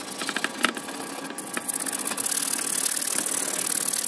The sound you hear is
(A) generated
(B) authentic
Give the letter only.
B